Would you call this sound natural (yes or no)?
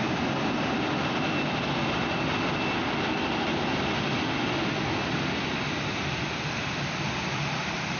yes